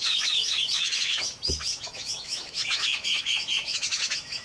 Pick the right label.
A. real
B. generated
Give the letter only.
B